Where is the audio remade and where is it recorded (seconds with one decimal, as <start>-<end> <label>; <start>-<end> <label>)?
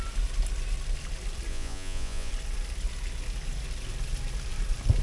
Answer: 0.0-1.5 recorded; 1.5-2.3 remade; 2.3-5.0 recorded